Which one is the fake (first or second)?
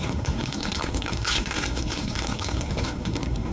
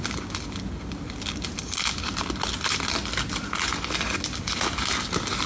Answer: first